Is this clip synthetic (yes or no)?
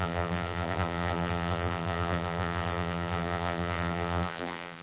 yes